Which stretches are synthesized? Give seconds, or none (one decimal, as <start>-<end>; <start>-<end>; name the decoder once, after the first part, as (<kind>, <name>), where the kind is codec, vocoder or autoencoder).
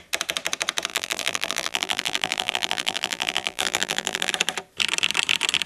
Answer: 0.9-4.3 (vocoder, BigVGAN v2)